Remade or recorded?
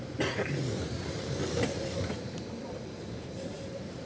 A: remade